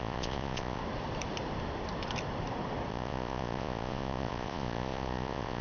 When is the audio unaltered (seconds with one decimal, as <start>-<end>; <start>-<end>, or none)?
0.8-2.9